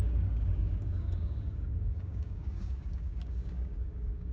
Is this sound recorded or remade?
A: remade